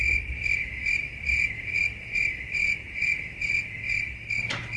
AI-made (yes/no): no